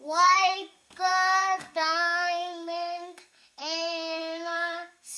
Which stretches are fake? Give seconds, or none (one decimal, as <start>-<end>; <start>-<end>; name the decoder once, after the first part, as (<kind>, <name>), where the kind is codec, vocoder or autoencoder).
0.0-5.2 (codec, SNAC)